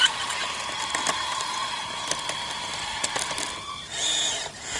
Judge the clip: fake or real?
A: real